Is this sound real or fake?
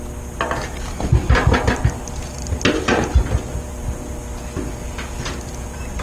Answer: real